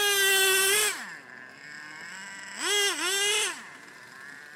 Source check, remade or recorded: recorded